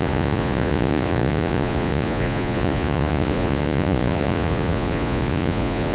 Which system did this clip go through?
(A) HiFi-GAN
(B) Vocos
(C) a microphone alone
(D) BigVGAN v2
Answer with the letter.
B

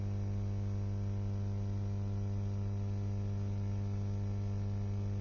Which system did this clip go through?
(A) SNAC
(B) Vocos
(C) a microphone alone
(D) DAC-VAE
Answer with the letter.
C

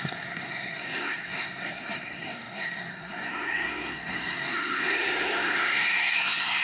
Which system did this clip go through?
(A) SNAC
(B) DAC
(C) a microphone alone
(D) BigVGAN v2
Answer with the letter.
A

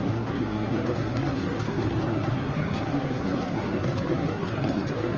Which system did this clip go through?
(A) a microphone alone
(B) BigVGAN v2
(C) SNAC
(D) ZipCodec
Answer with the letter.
C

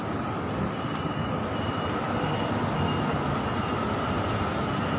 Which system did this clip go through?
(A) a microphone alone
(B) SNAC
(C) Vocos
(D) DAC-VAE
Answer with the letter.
A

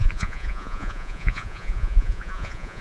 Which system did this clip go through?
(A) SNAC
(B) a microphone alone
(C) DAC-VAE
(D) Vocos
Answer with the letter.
D